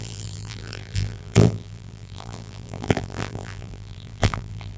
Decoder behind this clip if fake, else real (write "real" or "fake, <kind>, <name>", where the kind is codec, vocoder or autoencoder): fake, vocoder, BigVGAN v2